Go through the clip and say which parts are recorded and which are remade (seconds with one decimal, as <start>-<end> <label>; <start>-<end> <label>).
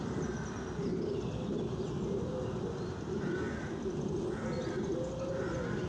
0.0-5.9 recorded